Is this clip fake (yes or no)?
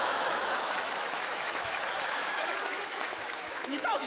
yes